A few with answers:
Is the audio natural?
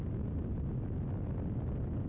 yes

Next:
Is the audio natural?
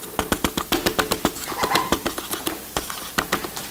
yes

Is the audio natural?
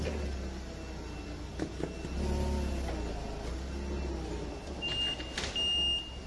yes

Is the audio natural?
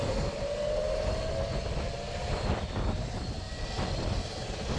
yes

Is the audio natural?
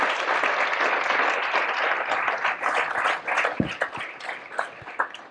yes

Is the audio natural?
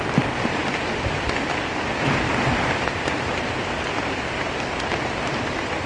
no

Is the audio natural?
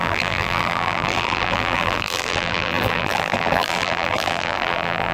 no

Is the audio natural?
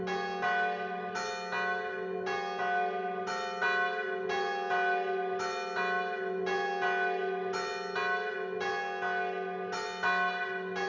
yes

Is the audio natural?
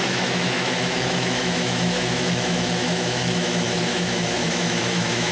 no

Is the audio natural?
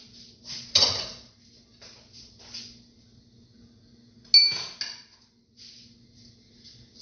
yes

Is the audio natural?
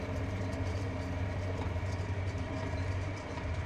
no